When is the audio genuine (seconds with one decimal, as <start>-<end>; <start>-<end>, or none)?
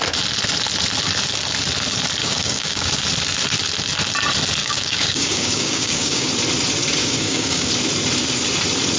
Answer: 0.0-2.2; 2.9-4.6; 6.3-7.0; 7.7-9.0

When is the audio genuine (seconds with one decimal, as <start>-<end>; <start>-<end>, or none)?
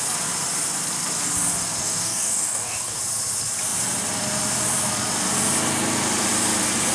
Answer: 0.0-1.8; 3.0-6.9